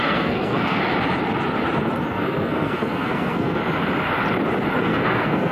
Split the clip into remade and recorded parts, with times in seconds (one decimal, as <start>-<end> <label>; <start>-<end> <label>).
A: 0.0-0.8 remade; 0.8-2.1 recorded; 2.1-3.6 remade; 3.6-4.8 recorded; 4.8-5.5 remade